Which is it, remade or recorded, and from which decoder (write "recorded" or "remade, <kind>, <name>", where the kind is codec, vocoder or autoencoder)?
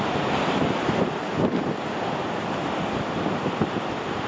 remade, vocoder, BigVGAN v2